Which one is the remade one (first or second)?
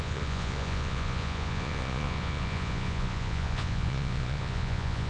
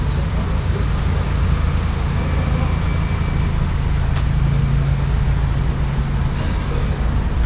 first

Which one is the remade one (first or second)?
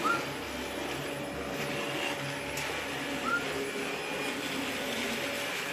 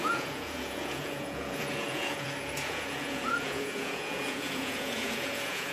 second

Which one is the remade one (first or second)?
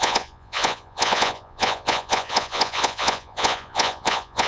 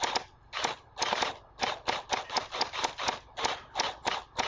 first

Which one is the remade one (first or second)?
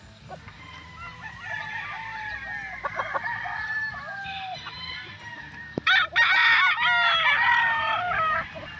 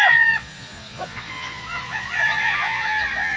second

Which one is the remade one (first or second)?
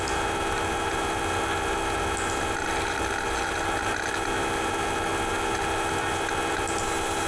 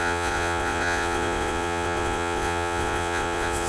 second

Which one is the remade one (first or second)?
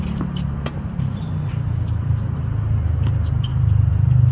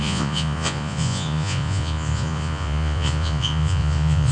second